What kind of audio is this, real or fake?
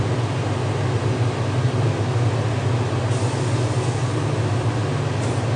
real